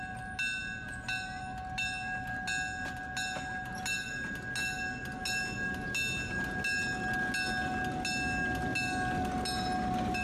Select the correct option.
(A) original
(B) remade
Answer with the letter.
A